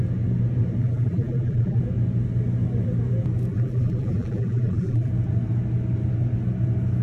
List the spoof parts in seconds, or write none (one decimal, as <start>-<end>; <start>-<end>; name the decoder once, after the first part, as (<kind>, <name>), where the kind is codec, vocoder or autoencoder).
0.8-1.8 (vocoder, BigVGAN v2); 3.5-5.1